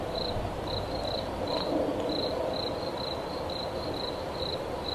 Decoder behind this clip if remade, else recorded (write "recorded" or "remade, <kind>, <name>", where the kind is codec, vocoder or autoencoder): recorded